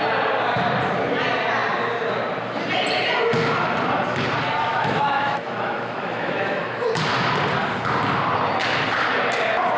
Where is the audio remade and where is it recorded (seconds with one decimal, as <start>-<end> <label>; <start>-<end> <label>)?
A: 0.0-4.7 recorded; 4.7-6.9 remade; 6.9-9.8 recorded